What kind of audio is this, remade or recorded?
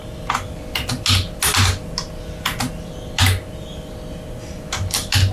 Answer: recorded